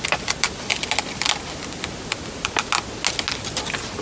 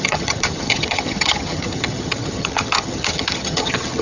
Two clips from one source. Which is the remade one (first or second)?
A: second